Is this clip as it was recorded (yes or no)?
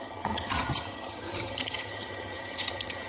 no